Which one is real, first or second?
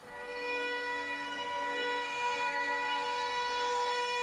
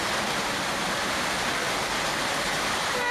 second